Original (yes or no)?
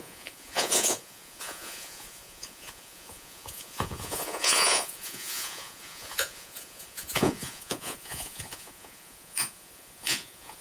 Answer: no